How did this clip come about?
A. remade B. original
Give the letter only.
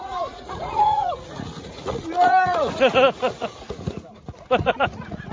A